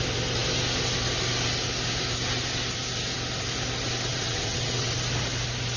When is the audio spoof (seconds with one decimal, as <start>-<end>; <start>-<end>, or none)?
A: 4.1-4.9